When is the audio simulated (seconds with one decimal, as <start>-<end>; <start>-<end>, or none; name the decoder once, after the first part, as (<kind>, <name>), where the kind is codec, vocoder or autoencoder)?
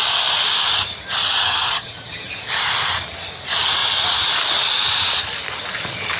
1.2-2.3 (vocoder, HiFi-GAN)